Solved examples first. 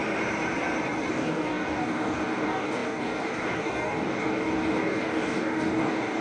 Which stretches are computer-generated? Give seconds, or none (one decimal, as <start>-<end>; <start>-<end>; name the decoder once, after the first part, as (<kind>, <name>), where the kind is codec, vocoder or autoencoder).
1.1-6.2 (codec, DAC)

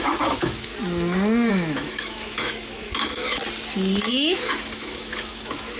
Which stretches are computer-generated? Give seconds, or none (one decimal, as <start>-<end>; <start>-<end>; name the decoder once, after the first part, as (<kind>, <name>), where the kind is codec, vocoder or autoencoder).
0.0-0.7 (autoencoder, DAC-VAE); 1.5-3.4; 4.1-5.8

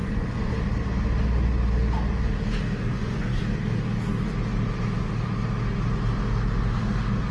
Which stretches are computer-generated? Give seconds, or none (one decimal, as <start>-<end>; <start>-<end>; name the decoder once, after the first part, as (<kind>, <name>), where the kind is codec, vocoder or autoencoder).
0.0-0.5 (vocoder, Vocos); 2.9-3.4

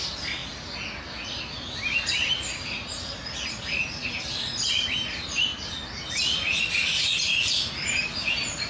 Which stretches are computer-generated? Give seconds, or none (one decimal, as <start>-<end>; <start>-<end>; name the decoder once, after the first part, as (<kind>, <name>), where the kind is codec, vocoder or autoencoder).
0.0-5.5 (vocoder, BigVGAN v2); 6.1-8.7